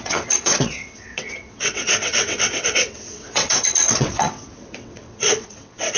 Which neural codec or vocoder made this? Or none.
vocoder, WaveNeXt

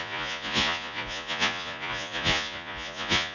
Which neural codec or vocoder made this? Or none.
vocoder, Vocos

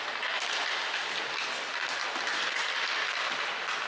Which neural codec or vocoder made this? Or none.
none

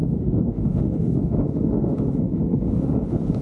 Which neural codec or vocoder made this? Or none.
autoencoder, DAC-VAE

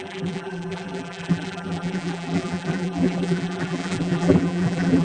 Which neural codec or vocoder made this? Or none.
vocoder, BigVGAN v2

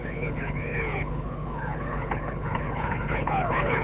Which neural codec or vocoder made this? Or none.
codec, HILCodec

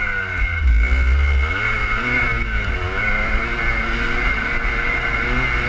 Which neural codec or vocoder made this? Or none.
none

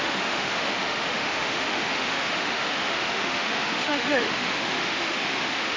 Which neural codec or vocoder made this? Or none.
autoencoder, DAC-VAE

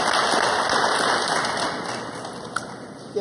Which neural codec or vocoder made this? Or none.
none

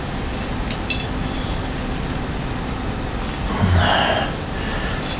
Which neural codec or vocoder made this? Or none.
none